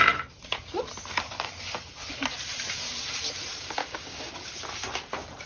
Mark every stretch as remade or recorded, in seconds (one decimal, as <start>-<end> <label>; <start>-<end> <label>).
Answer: 0.0-3.8 recorded; 3.8-4.3 remade; 4.3-5.5 recorded